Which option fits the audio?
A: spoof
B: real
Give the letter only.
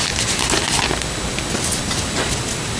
B